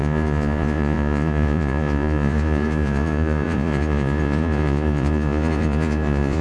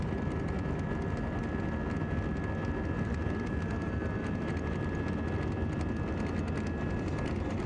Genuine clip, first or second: second